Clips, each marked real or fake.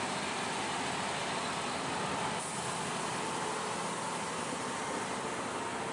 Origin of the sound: real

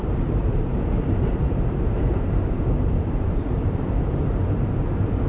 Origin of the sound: fake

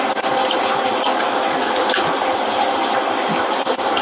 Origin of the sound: real